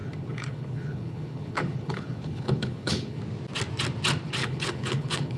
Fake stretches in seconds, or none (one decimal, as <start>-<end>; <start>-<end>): 0.0-3.2; 4.4-5.4